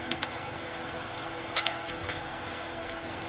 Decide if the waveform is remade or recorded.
remade